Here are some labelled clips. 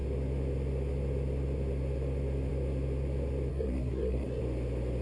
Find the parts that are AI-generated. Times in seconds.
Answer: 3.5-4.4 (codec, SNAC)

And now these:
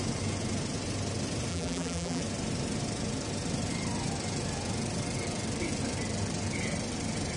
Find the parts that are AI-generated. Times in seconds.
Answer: 1.5-2.2 (vocoder, BigVGAN v2)

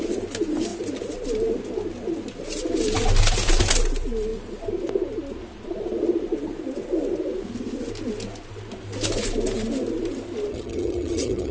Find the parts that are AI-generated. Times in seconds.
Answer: 10.5-11.5 (vocoder, HiFi-GAN)

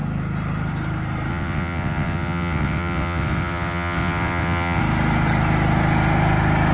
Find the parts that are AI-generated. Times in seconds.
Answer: 1.3-4.8 (vocoder, WaveNeXt)

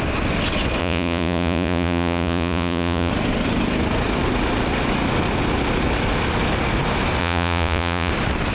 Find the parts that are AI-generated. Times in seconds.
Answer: 0.8-3.1 (vocoder, Vocos); 7.2-8.1

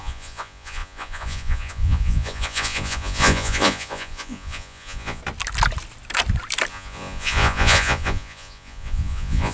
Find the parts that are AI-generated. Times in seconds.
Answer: 0.0-5.2 (vocoder, Vocos); 6.7-9.5

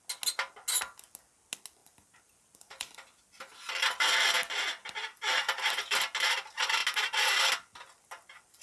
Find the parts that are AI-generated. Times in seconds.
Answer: 1.8-3.7 (vocoder, BigVGAN v2); 5.0-5.8